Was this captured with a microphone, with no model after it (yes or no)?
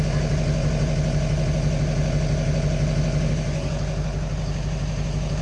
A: yes